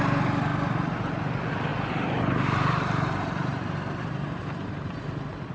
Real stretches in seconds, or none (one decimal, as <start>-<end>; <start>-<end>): 0.0-1.7; 5.0-5.5